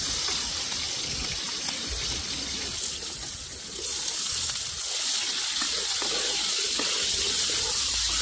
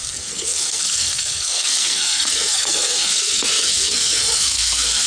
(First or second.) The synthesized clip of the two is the second